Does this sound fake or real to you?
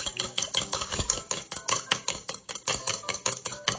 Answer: fake